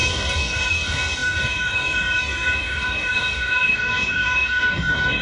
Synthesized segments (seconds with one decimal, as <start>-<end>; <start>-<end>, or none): 0.0-5.2